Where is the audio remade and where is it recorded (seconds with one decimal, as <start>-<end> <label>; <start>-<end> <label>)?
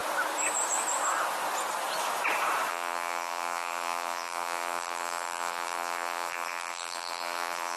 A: 0.0-2.7 recorded; 2.7-7.8 remade